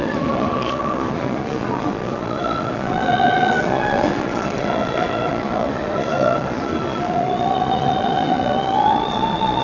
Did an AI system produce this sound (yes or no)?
yes